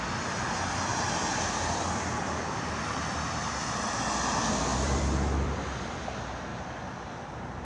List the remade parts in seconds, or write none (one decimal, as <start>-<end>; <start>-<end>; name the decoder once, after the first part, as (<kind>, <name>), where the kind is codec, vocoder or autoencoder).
0.9-3.8 (vocoder, BigVGAN v2); 4.7-5.6